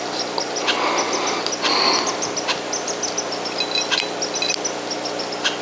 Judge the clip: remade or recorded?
recorded